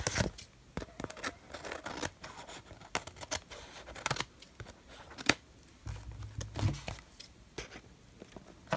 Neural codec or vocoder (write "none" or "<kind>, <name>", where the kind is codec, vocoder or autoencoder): none